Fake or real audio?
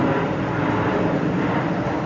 real